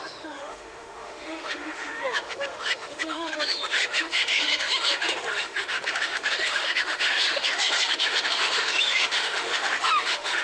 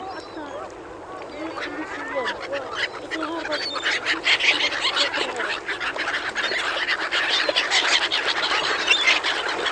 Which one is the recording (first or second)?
second